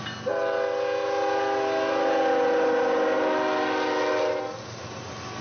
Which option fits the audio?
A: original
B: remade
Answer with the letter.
A